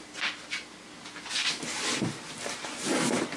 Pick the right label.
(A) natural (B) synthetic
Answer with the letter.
A